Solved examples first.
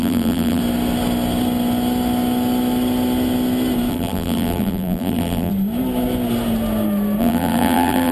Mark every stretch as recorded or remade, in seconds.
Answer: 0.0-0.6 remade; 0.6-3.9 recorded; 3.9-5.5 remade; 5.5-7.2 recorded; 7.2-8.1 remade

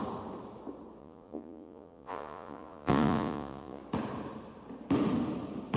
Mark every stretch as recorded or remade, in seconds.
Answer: 0.0-1.0 recorded; 1.0-3.8 remade; 3.8-5.8 recorded

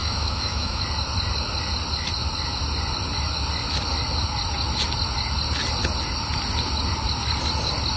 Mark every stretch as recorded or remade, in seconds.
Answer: 0.0-0.8 remade; 0.8-8.0 recorded

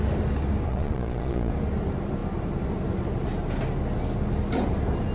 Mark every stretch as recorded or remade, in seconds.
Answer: 0.0-0.7 recorded; 0.7-1.5 remade; 1.5-5.1 recorded

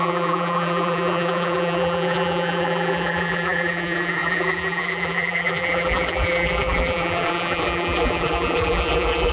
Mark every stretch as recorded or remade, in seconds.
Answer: 0.0-9.3 remade

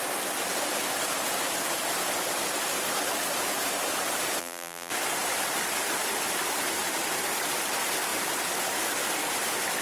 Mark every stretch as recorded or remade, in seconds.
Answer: 0.0-4.4 recorded; 4.4-4.9 remade; 4.9-9.8 recorded

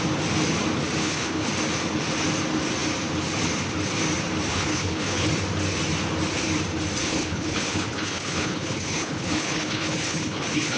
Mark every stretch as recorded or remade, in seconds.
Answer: 0.0-1.0 recorded; 1.0-1.5 remade; 1.5-4.5 recorded; 4.5-5.3 remade; 5.3-7.0 recorded; 7.0-10.8 remade

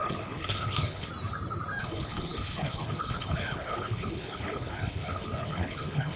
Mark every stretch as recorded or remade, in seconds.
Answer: 0.0-1.1 remade; 1.1-1.8 recorded; 1.8-6.2 remade